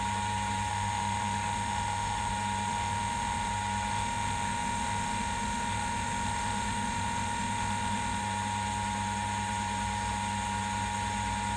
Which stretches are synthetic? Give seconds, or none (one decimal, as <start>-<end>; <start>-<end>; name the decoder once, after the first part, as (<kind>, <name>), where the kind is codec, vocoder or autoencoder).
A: 0.7-2.3 (autoencoder, DAC-VAE); 2.7-3.5; 3.9-8.2